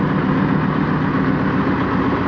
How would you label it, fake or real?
real